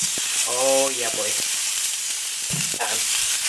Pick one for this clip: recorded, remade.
remade